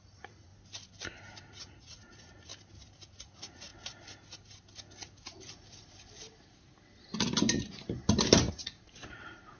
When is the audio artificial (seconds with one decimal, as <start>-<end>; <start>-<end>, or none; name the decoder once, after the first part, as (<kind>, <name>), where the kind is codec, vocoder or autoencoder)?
0.0-0.5 (vocoder, Vocos); 1.6-2.5; 3.1-3.7; 8.5-9.6

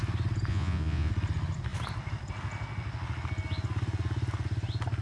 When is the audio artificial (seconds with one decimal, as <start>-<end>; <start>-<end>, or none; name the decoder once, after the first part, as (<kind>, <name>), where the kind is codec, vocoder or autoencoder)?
0.5-1.1 (vocoder, Vocos)

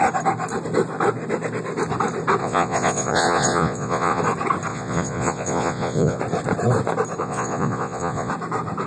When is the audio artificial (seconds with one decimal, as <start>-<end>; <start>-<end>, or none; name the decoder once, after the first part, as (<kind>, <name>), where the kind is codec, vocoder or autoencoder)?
2.4-4.2 (vocoder, Vocos); 4.7-6.2; 7.2-8.3